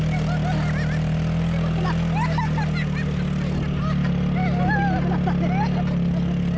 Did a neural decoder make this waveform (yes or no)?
no